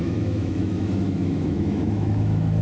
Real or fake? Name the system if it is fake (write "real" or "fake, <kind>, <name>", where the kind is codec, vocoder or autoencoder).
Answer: fake, autoencoder, DAC-VAE